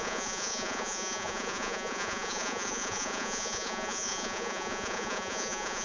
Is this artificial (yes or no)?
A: yes